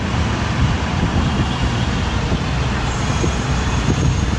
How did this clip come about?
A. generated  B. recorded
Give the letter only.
A